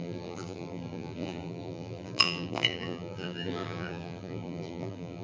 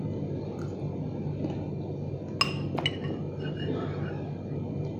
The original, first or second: second